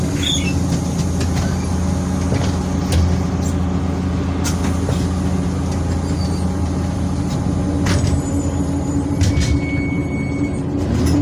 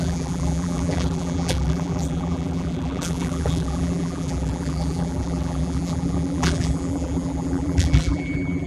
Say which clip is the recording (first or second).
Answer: first